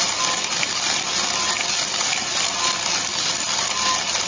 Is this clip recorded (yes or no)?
yes